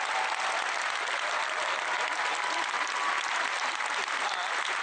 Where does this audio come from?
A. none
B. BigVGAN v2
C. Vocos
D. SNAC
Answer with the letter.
A